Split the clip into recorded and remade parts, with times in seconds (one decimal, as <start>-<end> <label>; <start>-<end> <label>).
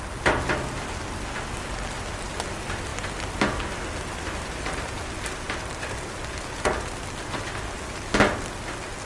0.0-9.1 recorded